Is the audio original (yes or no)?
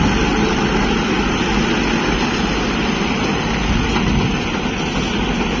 yes